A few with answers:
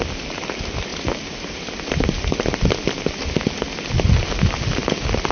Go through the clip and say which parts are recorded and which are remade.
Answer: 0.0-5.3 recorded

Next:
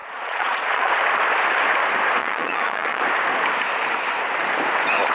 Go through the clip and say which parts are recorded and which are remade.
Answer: 0.0-0.9 remade; 0.9-2.2 recorded; 2.2-3.0 remade; 3.0-5.1 recorded

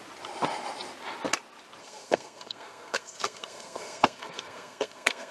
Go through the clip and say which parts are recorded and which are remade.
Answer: 0.0-1.8 recorded; 1.8-5.3 remade

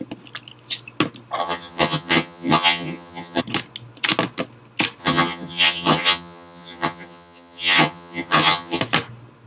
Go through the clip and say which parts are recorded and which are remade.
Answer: 0.0-1.4 recorded; 1.4-3.4 remade; 3.4-5.0 recorded; 5.0-8.8 remade; 8.8-9.5 recorded

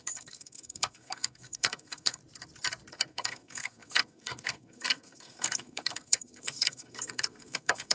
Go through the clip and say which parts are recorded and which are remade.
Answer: 0.0-2.2 remade; 2.2-2.9 recorded; 2.9-7.9 remade

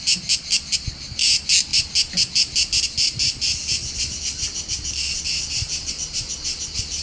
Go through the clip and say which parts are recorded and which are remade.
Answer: 0.0-7.0 recorded

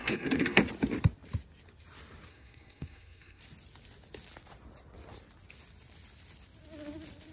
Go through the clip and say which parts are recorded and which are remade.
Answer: 0.0-0.6 remade; 0.6-2.3 recorded; 2.3-3.4 remade; 3.4-7.3 recorded